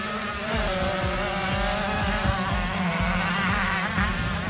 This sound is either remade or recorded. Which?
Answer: remade